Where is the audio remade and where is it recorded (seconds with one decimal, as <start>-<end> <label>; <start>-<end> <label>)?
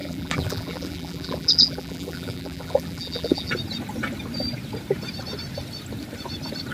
0.0-3.5 remade; 3.5-6.7 recorded